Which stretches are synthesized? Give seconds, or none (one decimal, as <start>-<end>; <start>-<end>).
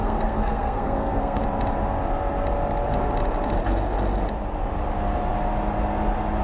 0.0-1.4